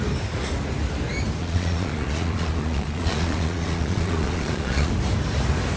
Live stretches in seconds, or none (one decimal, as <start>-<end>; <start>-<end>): 0.0-1.4; 4.9-5.8